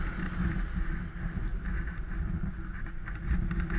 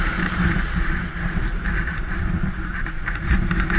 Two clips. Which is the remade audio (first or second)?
second